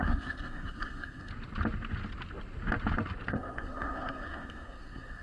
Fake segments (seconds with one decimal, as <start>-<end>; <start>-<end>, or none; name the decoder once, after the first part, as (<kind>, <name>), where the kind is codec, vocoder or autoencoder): 0.0-1.3 (codec, SNAC); 3.3-5.2